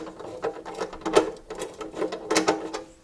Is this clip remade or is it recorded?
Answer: recorded